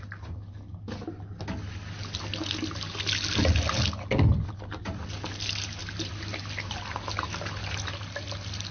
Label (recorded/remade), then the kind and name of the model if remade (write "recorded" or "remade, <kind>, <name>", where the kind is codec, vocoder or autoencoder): recorded